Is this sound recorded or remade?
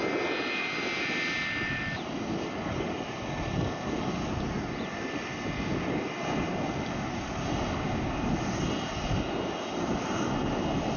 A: recorded